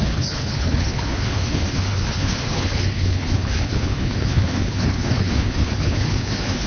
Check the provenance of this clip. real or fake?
fake